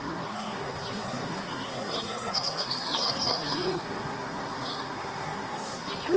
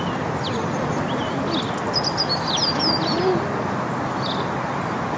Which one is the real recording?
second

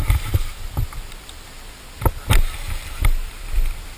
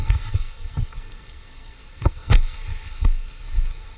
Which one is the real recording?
first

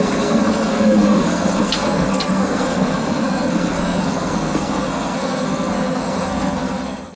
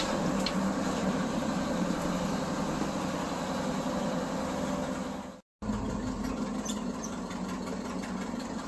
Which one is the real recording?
second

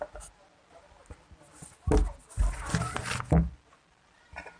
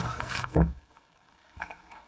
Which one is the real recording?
first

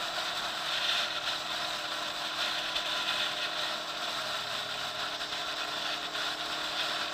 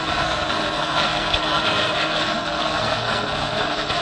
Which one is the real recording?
first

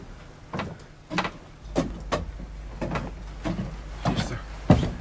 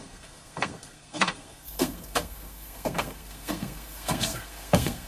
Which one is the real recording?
first